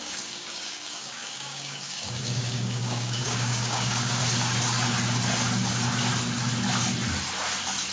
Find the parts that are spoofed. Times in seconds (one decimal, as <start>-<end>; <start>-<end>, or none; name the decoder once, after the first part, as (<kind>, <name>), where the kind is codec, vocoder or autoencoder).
0.0-4.2 (codec, DAC)